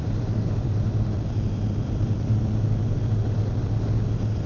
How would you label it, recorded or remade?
remade